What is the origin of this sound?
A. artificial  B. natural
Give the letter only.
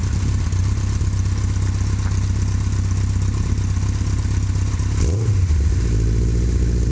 B